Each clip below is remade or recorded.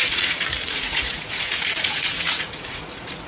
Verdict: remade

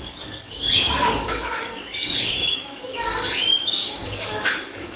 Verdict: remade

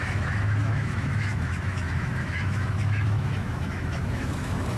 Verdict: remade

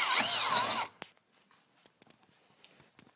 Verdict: recorded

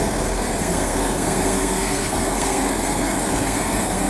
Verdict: remade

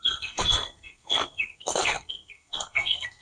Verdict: remade